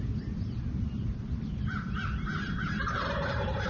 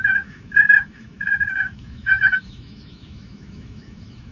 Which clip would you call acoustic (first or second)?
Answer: first